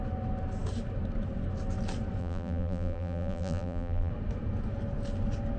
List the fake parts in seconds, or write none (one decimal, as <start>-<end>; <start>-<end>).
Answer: 2.2-4.1